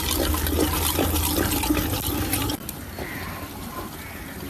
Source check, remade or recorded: recorded